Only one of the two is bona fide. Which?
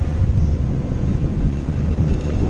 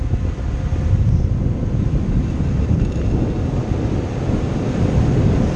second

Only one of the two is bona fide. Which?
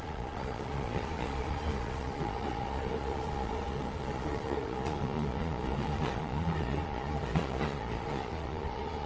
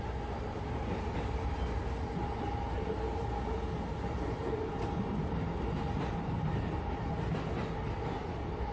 second